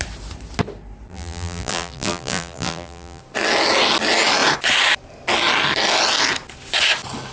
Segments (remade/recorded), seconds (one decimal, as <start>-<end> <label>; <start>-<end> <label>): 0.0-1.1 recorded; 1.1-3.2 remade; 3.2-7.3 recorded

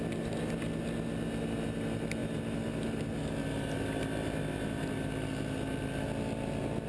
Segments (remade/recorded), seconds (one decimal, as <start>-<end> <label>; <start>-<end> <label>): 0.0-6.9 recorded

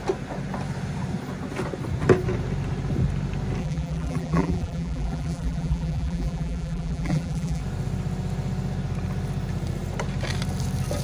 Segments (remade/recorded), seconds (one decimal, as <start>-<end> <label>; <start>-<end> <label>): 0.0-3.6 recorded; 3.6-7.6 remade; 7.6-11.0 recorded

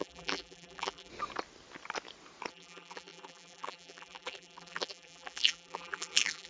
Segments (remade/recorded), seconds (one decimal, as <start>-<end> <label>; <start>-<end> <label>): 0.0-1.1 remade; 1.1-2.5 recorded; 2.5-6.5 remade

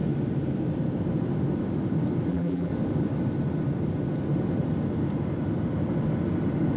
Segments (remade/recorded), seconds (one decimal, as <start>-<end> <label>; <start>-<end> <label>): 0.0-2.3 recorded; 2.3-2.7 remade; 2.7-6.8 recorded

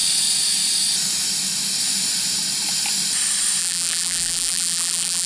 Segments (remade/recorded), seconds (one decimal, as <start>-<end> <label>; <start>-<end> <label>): 0.0-3.6 recorded; 3.6-5.3 remade

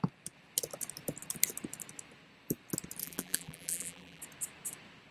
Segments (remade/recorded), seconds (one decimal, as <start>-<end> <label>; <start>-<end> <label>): 0.0-3.0 recorded; 3.0-4.2 remade; 4.2-5.1 recorded

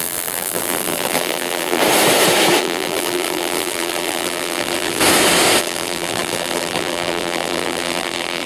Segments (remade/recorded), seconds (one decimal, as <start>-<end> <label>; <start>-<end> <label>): 0.0-1.8 remade; 1.8-2.6 recorded; 2.6-5.0 remade; 5.0-5.6 recorded; 5.6-8.5 remade